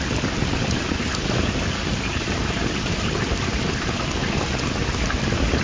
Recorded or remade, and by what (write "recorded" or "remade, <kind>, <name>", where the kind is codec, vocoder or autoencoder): recorded